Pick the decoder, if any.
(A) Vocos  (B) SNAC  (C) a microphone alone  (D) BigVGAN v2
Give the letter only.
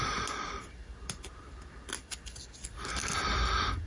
C